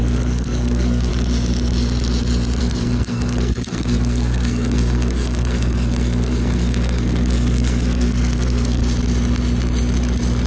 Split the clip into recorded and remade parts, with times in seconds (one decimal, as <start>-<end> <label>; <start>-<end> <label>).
0.0-1.1 remade; 1.1-2.6 recorded; 2.6-8.8 remade; 8.8-10.5 recorded

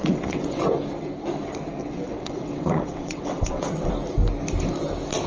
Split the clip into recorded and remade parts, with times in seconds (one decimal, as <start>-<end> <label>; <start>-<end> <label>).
0.0-0.7 remade; 0.7-1.8 recorded; 1.8-3.9 remade; 3.9-5.3 recorded

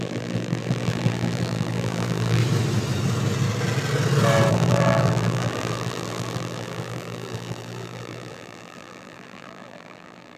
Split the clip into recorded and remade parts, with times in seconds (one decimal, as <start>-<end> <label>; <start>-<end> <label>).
0.0-2.4 remade; 2.4-4.5 recorded; 4.5-10.4 remade

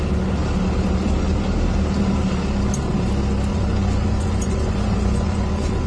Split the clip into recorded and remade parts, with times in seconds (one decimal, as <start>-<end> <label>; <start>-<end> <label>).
0.0-3.5 recorded; 3.5-5.9 remade

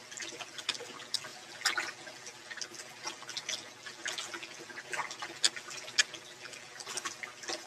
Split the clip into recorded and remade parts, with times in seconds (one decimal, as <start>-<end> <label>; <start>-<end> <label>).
0.0-7.7 recorded

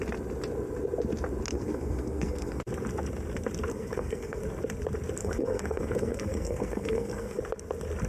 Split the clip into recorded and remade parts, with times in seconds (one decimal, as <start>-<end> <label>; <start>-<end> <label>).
0.0-1.5 recorded; 1.5-2.6 remade; 2.6-3.7 recorded; 3.7-4.4 remade; 4.4-5.2 recorded; 5.2-7.4 remade; 7.4-8.1 recorded

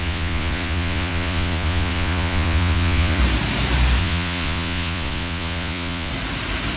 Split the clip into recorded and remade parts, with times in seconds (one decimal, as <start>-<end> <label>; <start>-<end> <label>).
0.0-3.2 remade; 3.2-4.0 recorded; 4.0-6.1 remade; 6.1-6.8 recorded